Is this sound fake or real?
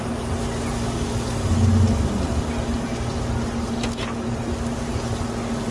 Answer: real